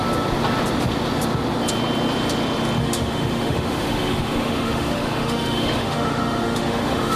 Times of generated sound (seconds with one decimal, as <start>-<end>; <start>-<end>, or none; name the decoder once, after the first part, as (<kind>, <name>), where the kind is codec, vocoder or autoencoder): 2.8-7.2 (autoencoder, DAC-VAE)